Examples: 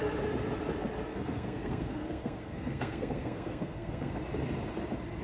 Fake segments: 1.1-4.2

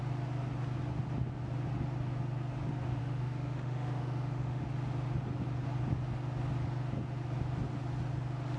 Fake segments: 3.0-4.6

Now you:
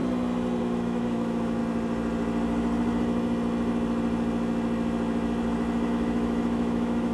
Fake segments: 0.6-1.6; 5.9-7.1

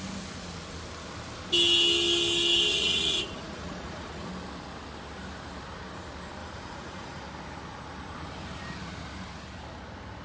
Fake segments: 2.7-4.3; 6.4-7.2

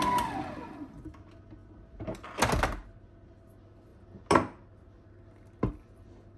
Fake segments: none